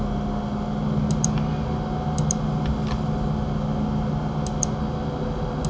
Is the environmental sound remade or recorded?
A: recorded